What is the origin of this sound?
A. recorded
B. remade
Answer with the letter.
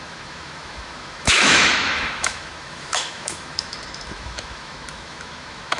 B